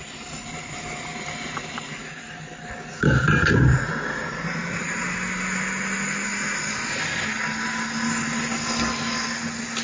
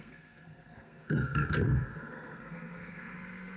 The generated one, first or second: second